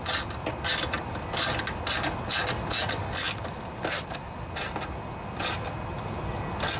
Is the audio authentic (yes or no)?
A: yes